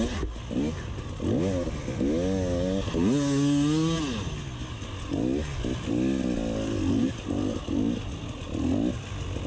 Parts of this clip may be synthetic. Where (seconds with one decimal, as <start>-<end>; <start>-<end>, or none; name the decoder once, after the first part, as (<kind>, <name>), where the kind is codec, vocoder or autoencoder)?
7.0-7.6 (vocoder, BigVGAN v2)